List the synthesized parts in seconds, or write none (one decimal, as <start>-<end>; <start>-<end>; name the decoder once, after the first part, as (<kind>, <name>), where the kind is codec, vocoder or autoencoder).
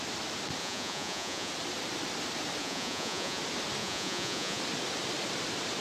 0.6-1.5 (vocoder, Vocos); 2.6-3.4; 3.8-4.6